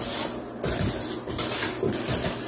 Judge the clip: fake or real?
real